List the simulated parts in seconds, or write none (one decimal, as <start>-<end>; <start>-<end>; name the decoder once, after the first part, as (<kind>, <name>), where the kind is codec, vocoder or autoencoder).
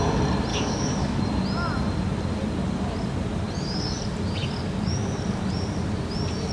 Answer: 0.5-1.2 (codec, DAC)